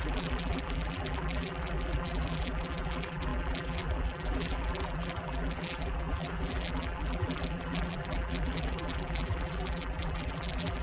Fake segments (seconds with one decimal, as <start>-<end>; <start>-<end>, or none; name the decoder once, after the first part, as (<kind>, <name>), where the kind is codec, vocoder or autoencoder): 0.0-10.8 (vocoder, BigVGAN v2)